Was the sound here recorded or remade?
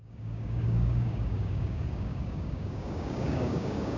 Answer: remade